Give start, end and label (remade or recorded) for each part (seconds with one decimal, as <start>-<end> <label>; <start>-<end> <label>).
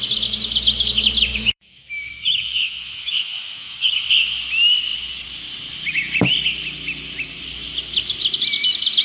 0.0-1.3 recorded; 1.3-4.1 remade; 4.1-9.0 recorded